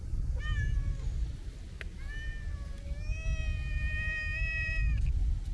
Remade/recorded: recorded